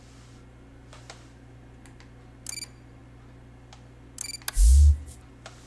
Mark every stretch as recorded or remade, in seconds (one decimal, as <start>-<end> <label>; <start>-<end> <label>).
0.0-5.7 recorded